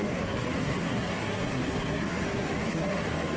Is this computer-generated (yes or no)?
yes